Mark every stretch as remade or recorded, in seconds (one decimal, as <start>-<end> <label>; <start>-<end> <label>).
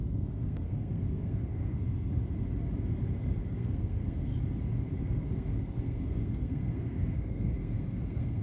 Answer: 0.0-2.1 remade; 2.1-3.4 recorded; 3.4-4.3 remade; 4.3-5.0 recorded; 5.0-8.4 remade